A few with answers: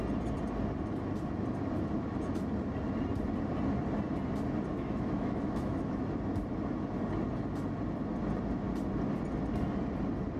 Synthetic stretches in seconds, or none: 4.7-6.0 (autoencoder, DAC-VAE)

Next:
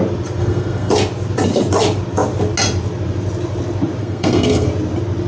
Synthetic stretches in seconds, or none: 0.4-0.9 (codec, SNAC); 4.0-4.7